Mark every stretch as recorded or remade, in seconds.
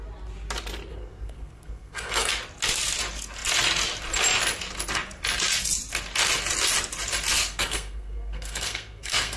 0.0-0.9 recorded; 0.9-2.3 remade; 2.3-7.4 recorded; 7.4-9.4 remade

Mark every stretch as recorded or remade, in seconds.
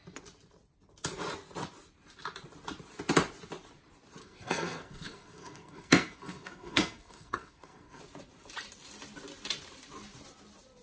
0.0-4.2 recorded; 4.2-8.0 remade; 8.0-10.8 recorded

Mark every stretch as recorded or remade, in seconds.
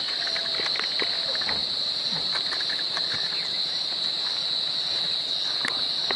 0.0-1.6 recorded; 1.6-5.3 remade; 5.3-6.2 recorded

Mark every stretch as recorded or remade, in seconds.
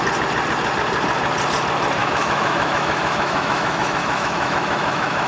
0.0-2.0 recorded; 2.0-5.3 remade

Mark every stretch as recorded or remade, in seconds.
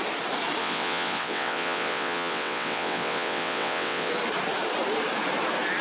0.0-0.6 recorded; 0.6-4.1 remade; 4.1-5.8 recorded